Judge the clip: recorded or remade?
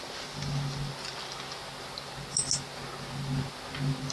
recorded